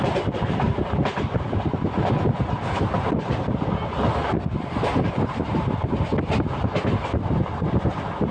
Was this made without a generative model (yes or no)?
no